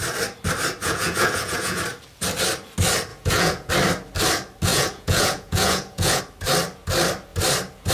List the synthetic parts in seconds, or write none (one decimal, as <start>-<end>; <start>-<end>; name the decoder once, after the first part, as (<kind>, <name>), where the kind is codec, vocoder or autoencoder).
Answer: 0.8-1.8 (vocoder, Vocos); 3.1-3.7; 4.7-6.2